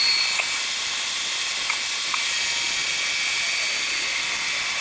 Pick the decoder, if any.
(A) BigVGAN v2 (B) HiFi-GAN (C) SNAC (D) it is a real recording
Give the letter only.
D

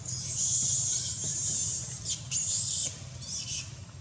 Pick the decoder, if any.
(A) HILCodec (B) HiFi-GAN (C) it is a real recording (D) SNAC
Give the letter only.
C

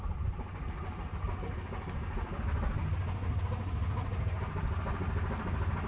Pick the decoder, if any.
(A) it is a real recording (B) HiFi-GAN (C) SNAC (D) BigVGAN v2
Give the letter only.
A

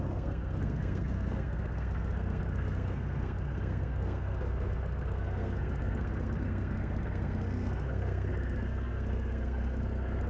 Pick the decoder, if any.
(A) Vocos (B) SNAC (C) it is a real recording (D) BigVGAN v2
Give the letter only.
B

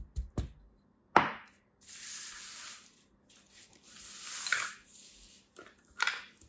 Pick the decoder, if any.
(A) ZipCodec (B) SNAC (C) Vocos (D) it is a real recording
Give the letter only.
D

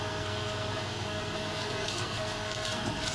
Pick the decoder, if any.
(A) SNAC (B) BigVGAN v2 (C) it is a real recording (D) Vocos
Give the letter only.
A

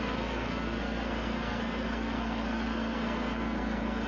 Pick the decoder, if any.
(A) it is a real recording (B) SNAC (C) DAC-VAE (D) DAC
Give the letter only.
B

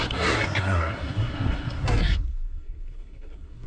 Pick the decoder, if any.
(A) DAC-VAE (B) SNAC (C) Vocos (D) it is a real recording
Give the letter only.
B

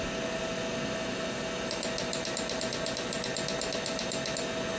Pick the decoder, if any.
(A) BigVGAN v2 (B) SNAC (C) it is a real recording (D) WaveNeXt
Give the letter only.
C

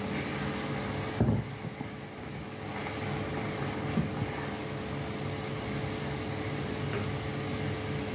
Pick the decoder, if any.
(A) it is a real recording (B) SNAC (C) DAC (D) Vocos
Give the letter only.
A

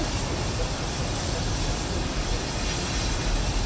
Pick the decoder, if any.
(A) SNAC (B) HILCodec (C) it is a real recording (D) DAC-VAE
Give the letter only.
C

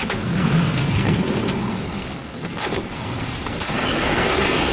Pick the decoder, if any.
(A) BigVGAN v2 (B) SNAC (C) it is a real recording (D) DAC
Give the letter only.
B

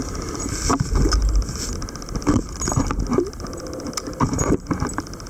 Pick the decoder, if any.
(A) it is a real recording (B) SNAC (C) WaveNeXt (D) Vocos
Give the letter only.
A